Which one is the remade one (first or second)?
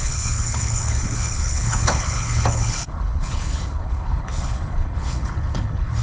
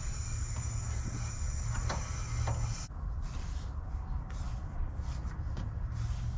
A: first